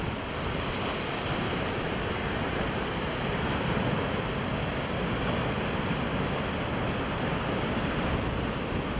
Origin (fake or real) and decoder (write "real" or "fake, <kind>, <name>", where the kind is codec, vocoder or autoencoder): real